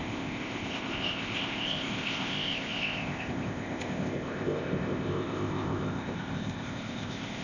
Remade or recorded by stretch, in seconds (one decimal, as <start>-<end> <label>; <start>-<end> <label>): 0.0-7.4 remade